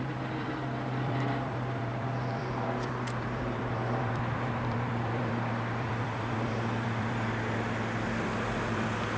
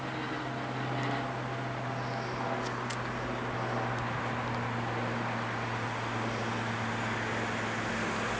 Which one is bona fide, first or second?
second